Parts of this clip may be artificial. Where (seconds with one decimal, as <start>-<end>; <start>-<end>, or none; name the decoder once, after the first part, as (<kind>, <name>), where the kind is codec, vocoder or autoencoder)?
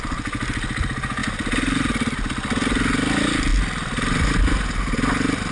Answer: none